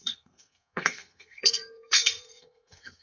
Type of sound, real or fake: fake